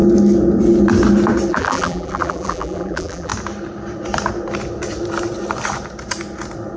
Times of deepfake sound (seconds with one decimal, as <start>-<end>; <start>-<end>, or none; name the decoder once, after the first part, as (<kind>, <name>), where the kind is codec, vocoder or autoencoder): 1.5-3.3 (vocoder, BigVGAN v2)